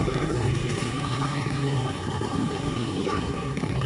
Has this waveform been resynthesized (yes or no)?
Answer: yes